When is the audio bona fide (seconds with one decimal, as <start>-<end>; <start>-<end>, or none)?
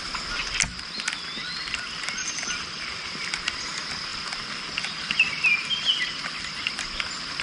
0.0-1.4; 3.6-4.1; 6.9-7.4